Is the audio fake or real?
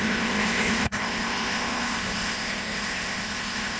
fake